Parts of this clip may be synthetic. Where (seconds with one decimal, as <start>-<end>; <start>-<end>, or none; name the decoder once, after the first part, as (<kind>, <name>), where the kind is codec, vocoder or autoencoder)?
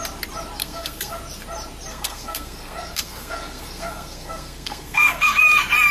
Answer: 0.6-1.1 (codec, SNAC); 1.9-5.4